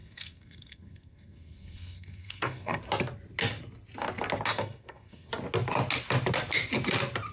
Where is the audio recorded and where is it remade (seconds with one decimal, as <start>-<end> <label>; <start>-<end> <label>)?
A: 0.0-2.8 remade; 2.8-4.5 recorded; 4.5-5.3 remade; 5.3-7.3 recorded